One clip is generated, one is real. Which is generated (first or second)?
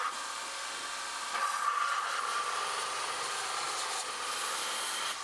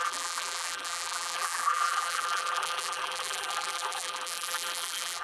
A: second